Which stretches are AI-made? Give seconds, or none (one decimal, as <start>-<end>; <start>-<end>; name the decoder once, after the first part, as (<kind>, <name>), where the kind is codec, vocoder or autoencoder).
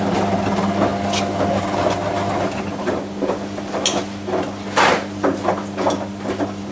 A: none